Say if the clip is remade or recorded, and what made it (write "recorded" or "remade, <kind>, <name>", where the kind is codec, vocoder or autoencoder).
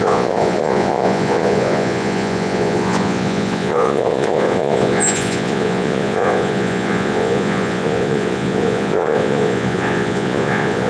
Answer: remade, vocoder, Vocos